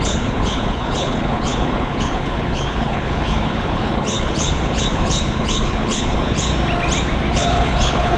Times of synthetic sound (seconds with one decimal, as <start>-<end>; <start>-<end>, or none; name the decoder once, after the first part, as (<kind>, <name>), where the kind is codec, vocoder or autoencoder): 0.0-6.5 (codec, HILCodec); 7.3-8.2